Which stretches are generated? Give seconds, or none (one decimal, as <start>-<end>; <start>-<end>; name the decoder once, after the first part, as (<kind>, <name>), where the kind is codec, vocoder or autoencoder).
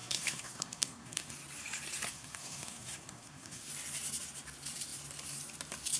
0.0-1.3 (codec, SNAC); 2.1-3.7